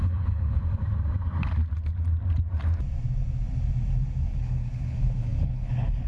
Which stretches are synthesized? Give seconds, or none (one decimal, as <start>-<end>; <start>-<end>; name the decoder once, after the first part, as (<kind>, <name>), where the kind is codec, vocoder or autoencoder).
0.0-0.6 (codec, HILCodec); 4.3-6.1